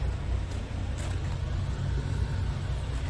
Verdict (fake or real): real